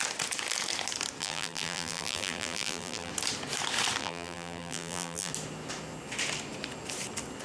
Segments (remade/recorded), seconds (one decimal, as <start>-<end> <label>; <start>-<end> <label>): 0.0-1.2 recorded; 1.2-3.1 remade; 3.1-4.0 recorded; 4.0-5.3 remade; 5.3-7.4 recorded